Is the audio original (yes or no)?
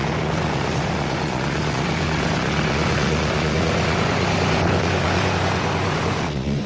no